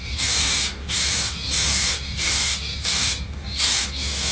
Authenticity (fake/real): fake